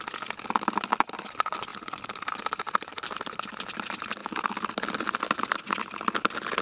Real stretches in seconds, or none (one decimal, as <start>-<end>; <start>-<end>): 0.0-6.6

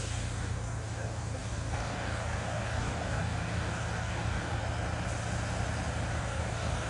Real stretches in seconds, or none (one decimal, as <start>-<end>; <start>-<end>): 4.6-6.2

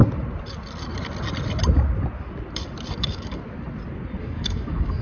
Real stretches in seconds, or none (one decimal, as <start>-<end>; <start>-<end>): 0.0-3.0; 3.4-4.2

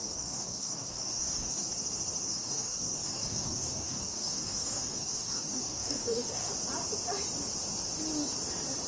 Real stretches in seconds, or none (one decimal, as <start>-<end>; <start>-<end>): 1.7-2.2; 6.5-8.9